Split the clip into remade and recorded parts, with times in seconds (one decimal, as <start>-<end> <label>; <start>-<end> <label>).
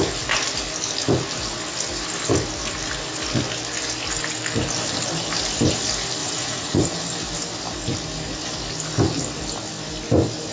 0.0-6.2 recorded; 6.2-6.8 remade; 6.8-10.5 recorded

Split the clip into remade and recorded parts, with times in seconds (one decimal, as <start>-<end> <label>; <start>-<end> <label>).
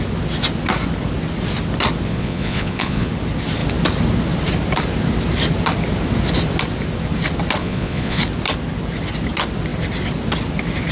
0.0-2.1 recorded; 2.1-3.1 remade; 3.1-7.6 recorded; 7.6-8.2 remade; 8.2-10.9 recorded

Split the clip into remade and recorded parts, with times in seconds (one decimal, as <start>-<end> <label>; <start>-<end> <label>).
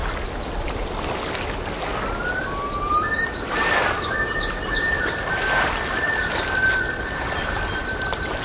0.0-8.4 recorded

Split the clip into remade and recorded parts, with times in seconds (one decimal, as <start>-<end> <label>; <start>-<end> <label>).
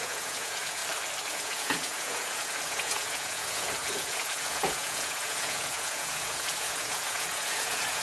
0.0-0.8 remade; 0.8-1.3 recorded; 1.3-8.0 remade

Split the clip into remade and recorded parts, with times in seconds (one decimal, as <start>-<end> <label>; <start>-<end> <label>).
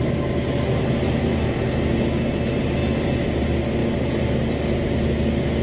0.0-5.6 recorded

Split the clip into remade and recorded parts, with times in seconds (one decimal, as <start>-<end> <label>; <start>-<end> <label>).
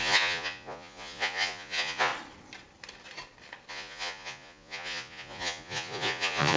0.0-2.1 remade; 2.1-3.7 recorded; 3.7-6.6 remade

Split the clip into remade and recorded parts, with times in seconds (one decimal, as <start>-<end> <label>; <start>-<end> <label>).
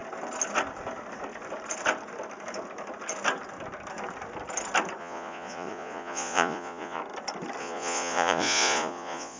0.0-5.0 recorded; 5.0-7.0 remade; 7.0-7.6 recorded; 7.6-9.4 remade